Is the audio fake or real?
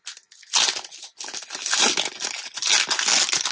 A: real